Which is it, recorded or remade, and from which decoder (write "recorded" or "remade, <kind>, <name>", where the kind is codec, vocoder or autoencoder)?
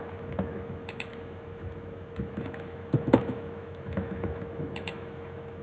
remade, autoencoder, DAC-VAE